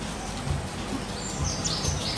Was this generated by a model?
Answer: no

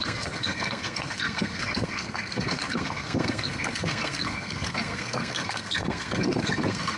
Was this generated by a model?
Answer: yes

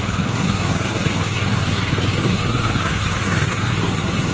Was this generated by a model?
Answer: yes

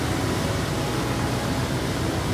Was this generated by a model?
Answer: yes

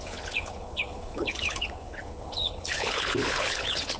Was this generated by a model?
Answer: yes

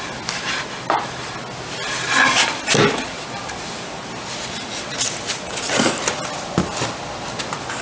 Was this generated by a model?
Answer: no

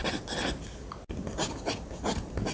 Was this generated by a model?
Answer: no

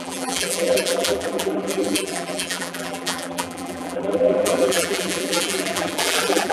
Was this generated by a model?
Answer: yes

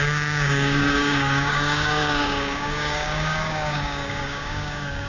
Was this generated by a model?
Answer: yes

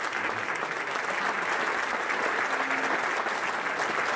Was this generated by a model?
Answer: no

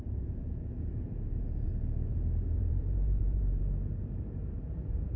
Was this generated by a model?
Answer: yes